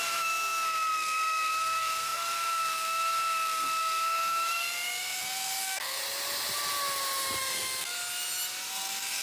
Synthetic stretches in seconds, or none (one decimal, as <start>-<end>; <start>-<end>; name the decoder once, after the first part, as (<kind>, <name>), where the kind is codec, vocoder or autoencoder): 0.0-6.0 (codec, SNAC); 7.4-8.0; 8.7-9.2